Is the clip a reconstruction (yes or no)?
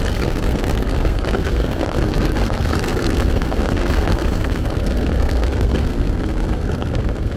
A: yes